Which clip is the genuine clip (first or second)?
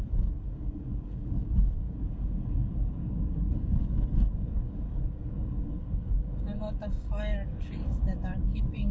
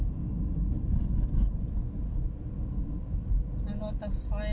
second